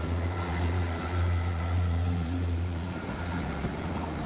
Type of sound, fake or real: fake